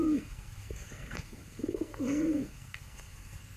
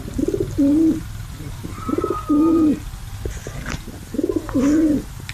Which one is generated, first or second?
first